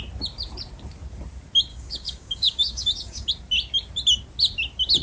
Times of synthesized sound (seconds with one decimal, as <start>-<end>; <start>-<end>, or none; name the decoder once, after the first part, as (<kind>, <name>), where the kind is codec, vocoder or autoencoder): 1.7-3.3 (codec, DAC)